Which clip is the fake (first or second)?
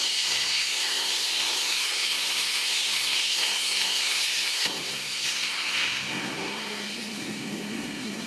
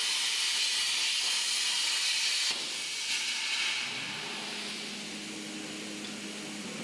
first